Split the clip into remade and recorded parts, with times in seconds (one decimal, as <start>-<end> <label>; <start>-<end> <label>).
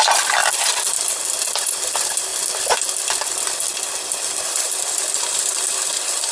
0.0-6.3 recorded